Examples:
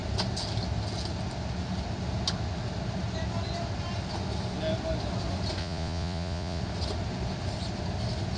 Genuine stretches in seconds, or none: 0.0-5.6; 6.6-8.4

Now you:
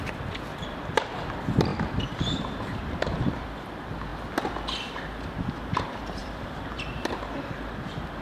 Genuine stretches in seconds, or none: 4.1-5.8

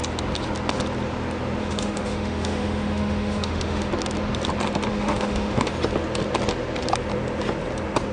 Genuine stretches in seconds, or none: 0.0-1.6; 3.9-4.9; 5.7-8.1

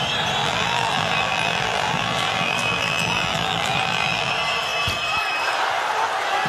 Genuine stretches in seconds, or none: 0.0-0.4; 4.3-6.5

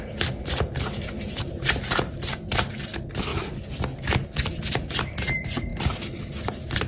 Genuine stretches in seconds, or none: 0.0-6.9

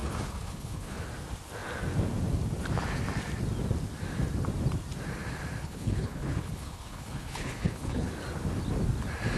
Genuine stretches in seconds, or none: 1.0-5.6; 8.1-9.4

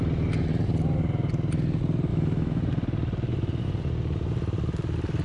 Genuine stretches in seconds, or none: 0.0-2.1; 2.6-5.2

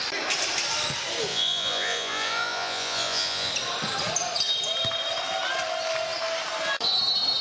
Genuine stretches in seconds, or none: 0.0-1.3; 3.5-7.4